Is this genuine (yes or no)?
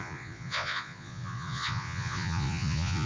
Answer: no